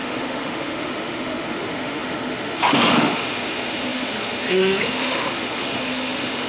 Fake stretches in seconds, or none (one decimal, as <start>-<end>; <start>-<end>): 0.0-6.5